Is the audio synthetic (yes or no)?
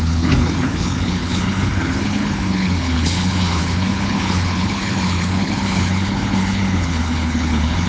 yes